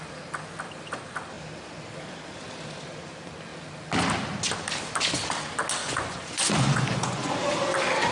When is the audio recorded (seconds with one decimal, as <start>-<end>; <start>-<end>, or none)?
0.0-5.8; 7.3-8.1